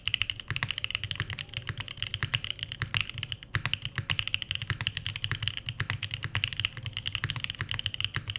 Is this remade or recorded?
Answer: recorded